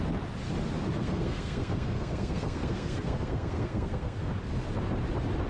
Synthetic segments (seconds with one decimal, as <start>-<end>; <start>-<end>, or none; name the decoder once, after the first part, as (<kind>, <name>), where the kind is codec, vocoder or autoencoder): 1.0-4.3 (codec, SNAC)